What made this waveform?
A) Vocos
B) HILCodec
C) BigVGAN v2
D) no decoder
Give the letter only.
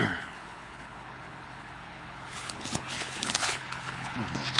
B